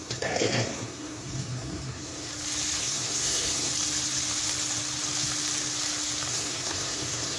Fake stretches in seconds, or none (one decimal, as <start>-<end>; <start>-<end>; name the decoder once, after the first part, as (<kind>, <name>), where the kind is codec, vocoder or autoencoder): 0.0-2.3 (codec, SNAC); 2.8-3.7; 6.3-7.4